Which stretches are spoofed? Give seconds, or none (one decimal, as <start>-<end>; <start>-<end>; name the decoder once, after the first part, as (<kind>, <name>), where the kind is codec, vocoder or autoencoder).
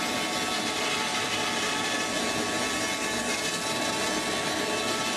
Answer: none